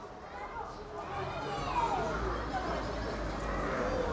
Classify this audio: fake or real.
real